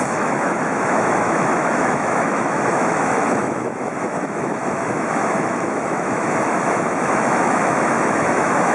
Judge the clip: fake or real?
fake